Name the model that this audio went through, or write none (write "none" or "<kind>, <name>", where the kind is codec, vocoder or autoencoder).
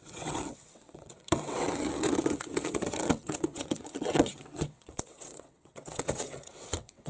vocoder, WaveNeXt